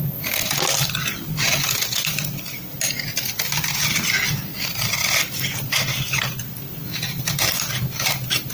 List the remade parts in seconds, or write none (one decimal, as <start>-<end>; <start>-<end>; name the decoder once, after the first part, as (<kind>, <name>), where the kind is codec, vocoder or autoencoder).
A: none